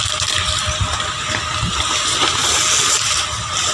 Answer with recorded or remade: recorded